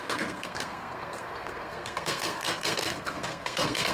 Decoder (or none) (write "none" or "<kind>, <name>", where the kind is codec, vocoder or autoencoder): codec, SNAC